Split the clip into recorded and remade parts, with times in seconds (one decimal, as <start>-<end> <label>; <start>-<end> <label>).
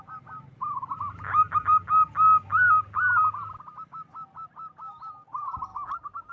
0.0-6.3 recorded